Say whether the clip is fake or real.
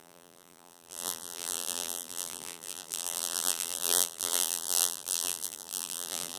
fake